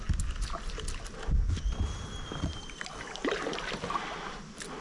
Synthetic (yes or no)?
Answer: no